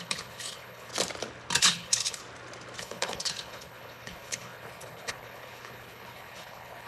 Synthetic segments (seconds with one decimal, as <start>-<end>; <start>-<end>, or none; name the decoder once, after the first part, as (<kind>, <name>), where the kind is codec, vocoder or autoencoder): 0.0-0.9 (codec, HILCodec); 1.6-2.2; 2.8-6.9